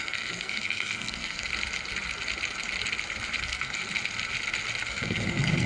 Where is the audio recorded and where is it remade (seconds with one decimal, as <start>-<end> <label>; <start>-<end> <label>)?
0.0-1.5 remade; 1.5-3.4 recorded; 3.4-3.8 remade; 3.8-4.9 recorded; 4.9-5.7 remade